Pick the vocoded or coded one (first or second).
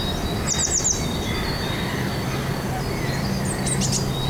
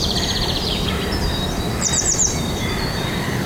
second